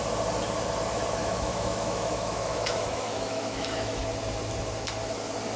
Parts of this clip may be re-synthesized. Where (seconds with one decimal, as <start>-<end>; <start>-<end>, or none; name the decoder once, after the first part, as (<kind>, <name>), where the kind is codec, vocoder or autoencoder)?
1.2-4.0 (autoencoder, DAC-VAE)